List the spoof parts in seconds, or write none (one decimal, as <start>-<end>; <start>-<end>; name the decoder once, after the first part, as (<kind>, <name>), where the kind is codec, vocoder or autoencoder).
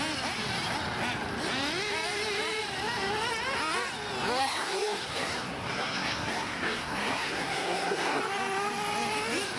4.4-8.2 (codec, SNAC)